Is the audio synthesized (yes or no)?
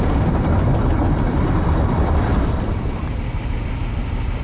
yes